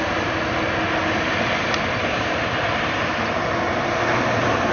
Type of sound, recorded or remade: recorded